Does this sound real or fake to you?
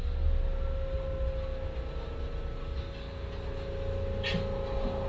real